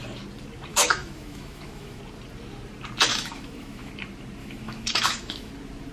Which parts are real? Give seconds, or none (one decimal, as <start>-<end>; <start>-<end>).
0.0-0.7; 2.0-3.1; 3.9-4.4; 5.5-5.9